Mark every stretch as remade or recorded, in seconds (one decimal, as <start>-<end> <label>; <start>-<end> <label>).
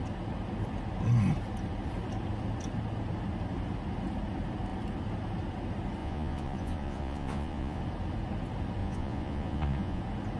0.0-6.0 recorded; 6.0-7.8 remade; 7.8-8.8 recorded; 8.8-10.0 remade; 10.0-10.4 recorded